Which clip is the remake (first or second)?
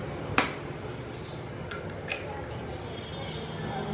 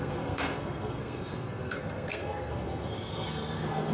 second